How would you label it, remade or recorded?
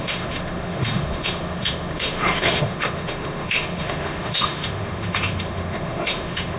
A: remade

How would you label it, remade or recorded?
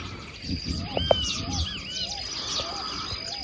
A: recorded